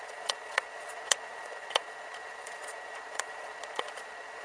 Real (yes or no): no